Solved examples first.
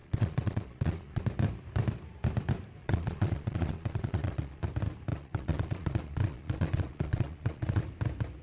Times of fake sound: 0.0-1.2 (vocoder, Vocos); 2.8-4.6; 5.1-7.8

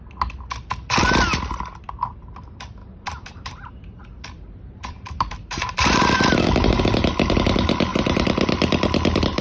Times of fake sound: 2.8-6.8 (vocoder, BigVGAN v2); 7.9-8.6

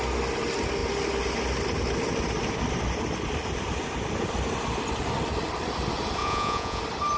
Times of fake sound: 6.2-6.8 (vocoder, Vocos)